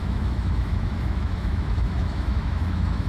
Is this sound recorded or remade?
remade